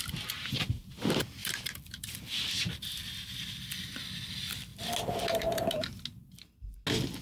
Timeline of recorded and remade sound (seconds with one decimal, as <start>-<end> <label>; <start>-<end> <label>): 0.0-1.4 recorded; 1.4-4.3 remade; 4.3-7.2 recorded